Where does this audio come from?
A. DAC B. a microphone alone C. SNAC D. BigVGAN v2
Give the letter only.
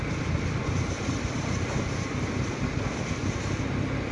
B